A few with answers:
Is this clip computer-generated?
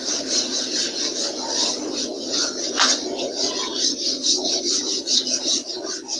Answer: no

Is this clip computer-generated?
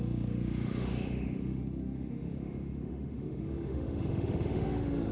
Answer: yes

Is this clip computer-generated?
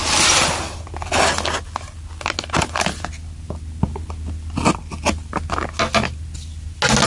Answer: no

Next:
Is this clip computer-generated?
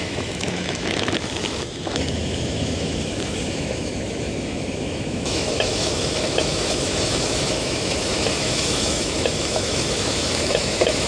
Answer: yes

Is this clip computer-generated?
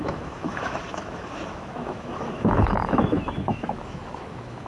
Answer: yes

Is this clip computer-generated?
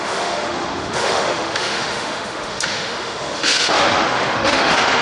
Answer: yes